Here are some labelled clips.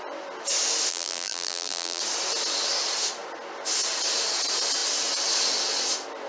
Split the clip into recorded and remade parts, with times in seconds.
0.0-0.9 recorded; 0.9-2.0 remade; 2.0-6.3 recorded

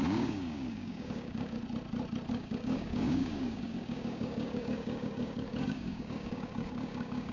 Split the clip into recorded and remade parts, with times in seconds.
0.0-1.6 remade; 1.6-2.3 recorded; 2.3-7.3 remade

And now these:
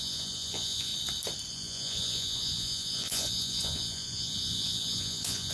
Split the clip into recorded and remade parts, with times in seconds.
0.0-0.9 remade; 0.9-1.5 recorded; 1.5-5.5 remade

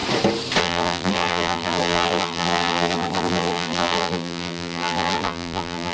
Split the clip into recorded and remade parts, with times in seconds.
0.0-0.6 recorded; 0.6-5.9 remade

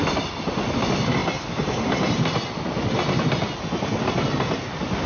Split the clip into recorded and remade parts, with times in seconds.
0.0-5.1 recorded